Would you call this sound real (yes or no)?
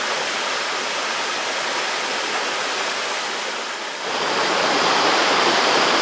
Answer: yes